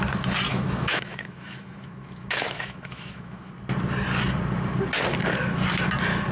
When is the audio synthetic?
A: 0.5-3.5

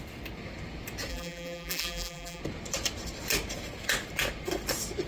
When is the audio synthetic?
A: 1.1-2.4